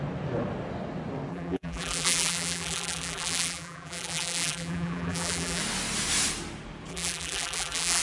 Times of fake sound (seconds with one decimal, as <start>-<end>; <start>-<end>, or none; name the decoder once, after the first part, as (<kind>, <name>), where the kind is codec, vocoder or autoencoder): 1.3-5.6 (vocoder, BigVGAN v2); 6.9-8.0